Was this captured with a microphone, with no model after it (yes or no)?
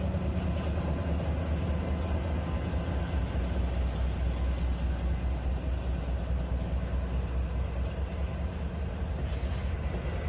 yes